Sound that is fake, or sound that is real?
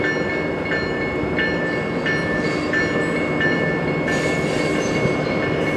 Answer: real